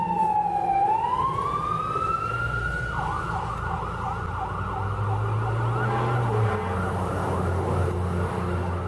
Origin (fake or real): real